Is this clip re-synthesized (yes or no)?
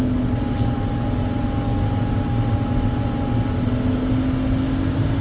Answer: no